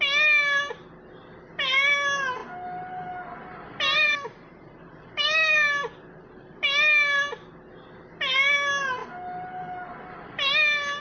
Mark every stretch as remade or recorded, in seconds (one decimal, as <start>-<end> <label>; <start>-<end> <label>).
0.0-11.0 recorded